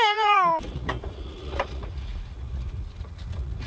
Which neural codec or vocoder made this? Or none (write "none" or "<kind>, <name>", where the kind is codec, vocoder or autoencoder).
vocoder, Vocos